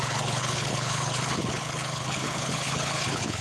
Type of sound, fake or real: fake